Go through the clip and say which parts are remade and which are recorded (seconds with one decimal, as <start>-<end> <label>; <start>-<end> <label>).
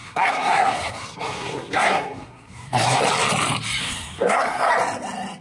0.0-3.0 remade; 3.0-3.8 recorded; 3.8-4.7 remade; 4.7-5.4 recorded